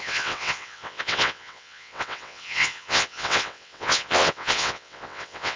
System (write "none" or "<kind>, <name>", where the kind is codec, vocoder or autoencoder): vocoder, WaveNeXt